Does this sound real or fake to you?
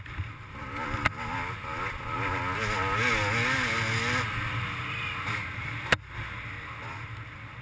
real